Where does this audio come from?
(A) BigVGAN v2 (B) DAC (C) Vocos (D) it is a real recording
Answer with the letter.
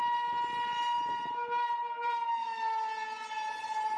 D